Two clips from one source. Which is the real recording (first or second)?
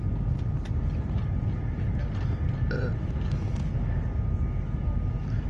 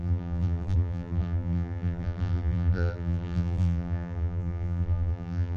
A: first